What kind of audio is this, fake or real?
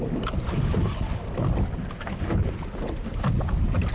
real